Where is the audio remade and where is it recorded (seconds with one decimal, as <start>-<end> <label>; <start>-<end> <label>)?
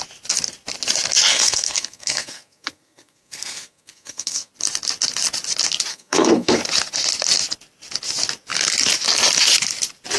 0.0-1.3 recorded; 1.3-4.5 remade; 4.5-5.9 recorded; 5.9-6.6 remade; 6.6-10.2 recorded